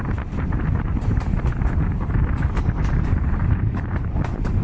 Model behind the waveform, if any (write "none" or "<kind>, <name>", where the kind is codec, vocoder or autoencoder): vocoder, BigVGAN v2